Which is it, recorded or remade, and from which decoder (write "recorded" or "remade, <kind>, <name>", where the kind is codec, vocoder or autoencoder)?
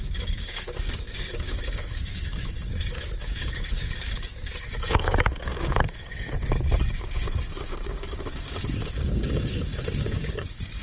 remade, codec, DAC